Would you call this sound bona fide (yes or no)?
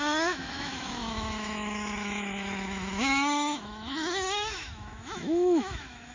no